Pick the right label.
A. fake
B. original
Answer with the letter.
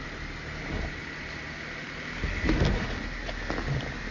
B